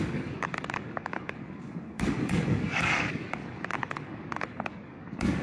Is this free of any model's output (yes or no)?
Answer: no